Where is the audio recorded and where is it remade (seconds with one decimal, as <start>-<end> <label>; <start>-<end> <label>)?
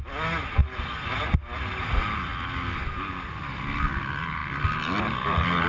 0.0-5.7 recorded